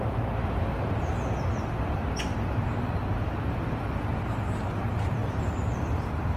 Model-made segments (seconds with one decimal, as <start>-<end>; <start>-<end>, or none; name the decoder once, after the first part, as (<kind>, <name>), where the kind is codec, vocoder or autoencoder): none